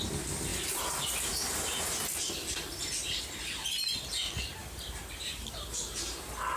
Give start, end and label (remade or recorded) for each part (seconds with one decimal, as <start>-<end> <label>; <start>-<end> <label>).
0.0-4.6 recorded; 4.6-6.0 remade; 6.0-6.6 recorded